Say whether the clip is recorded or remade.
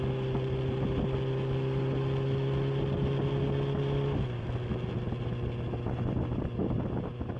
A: recorded